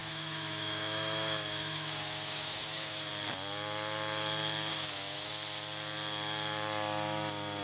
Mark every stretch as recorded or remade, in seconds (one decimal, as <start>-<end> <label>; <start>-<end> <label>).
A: 0.0-3.1 remade; 3.1-4.7 recorded; 4.7-5.3 remade; 5.3-7.6 recorded